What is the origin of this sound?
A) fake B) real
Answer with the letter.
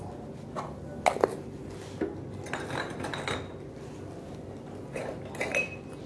B